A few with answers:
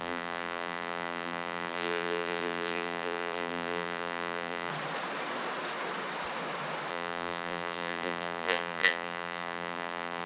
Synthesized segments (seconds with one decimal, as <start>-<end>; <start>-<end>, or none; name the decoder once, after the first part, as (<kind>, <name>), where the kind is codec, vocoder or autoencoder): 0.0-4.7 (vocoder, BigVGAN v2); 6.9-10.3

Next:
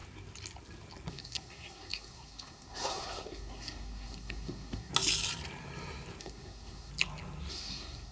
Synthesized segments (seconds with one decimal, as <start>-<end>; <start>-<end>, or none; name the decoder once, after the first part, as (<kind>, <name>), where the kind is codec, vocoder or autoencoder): 1.1-4.9 (codec, SNAC); 6.2-6.9; 7.5-8.1

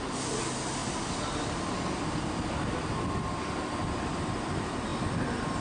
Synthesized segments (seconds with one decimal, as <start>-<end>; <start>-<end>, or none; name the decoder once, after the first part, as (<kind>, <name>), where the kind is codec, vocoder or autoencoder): none

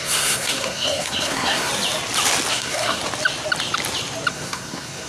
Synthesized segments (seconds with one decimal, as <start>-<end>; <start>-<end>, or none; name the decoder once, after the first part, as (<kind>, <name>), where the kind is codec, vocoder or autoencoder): 0.0-1.7 (codec, SNAC); 2.5-3.0; 4.3-5.1

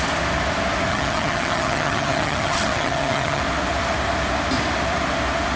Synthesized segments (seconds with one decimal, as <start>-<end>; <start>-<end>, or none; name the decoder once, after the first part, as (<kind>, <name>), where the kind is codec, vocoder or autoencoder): 0.9-3.4 (vocoder, HiFi-GAN)

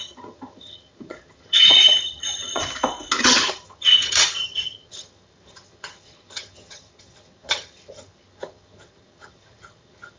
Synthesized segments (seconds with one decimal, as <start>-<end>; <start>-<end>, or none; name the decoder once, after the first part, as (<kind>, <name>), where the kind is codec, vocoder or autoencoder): 0.0-2.6 (vocoder, HiFi-GAN); 3.2-10.2

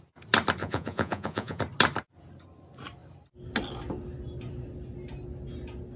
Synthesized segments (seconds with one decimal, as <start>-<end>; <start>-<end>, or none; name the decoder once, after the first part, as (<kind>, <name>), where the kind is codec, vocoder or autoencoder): 0.6-1.6 (vocoder, Vocos)